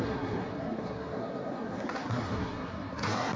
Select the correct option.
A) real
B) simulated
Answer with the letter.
B